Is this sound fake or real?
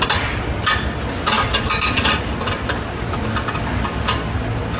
real